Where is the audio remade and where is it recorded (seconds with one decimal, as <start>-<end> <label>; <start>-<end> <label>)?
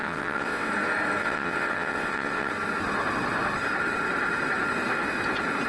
0.0-0.7 remade; 0.7-1.2 recorded; 1.2-2.5 remade; 2.5-5.7 recorded